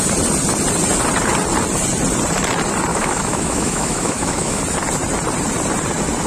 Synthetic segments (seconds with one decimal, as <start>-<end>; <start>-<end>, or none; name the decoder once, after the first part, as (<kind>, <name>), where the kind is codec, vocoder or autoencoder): 2.9-4.6 (autoencoder, DAC-VAE)